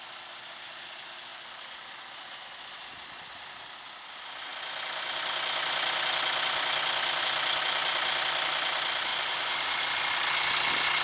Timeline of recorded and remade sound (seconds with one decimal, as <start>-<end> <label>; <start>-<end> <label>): 0.0-11.0 recorded